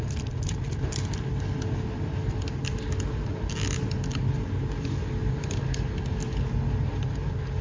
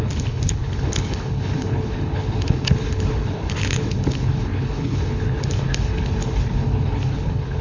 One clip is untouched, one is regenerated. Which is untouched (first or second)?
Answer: first